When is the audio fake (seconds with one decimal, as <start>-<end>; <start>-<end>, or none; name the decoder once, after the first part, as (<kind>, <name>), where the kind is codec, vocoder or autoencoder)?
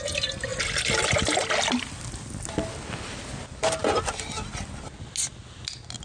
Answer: none